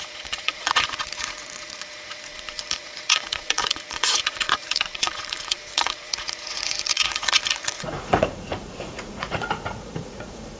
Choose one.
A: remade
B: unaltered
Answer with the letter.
A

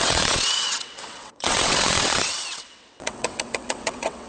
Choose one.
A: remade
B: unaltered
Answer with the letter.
A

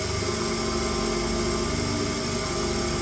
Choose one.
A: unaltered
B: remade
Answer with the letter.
A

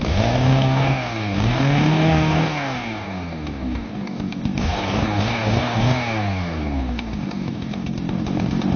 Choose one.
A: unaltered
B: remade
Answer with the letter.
B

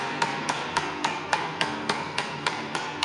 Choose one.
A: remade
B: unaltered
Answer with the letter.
A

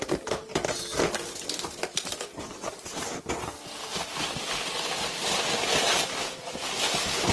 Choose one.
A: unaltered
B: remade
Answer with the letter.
A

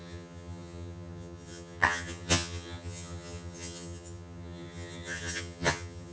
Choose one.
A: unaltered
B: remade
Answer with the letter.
B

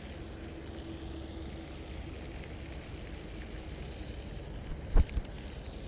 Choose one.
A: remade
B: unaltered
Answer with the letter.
B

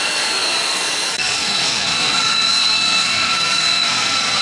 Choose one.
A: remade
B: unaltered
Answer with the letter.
A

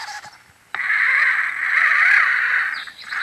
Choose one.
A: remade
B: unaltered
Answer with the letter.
B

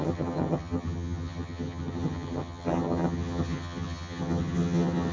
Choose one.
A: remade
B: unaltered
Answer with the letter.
A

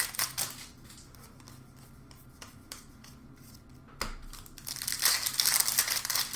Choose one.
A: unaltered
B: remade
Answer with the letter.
A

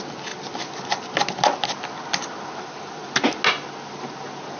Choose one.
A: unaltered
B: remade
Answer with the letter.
A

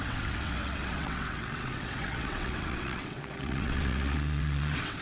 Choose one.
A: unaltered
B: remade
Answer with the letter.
B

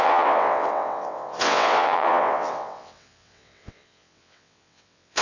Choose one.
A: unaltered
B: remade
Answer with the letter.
B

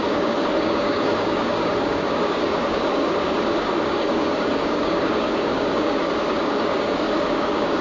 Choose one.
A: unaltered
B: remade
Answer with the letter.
B